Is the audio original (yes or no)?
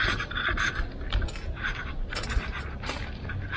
yes